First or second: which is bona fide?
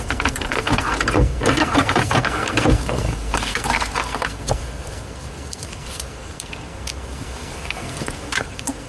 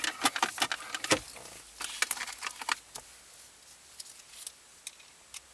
second